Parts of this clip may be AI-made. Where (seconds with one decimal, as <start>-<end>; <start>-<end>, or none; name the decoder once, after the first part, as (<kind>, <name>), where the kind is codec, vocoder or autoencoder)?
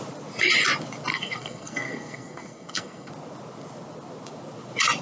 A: 1.1-3.1 (codec, SNAC)